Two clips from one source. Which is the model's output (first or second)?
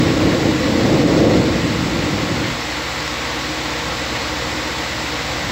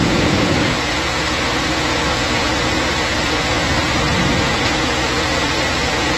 second